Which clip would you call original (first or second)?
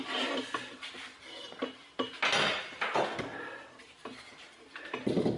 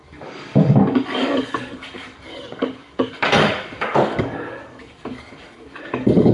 first